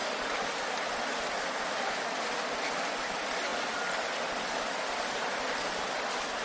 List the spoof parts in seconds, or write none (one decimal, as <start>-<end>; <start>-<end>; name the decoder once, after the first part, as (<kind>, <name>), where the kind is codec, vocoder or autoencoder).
0.0-0.6 (vocoder, BigVGAN v2)